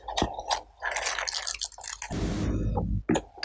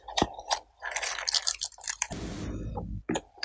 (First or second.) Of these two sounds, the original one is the first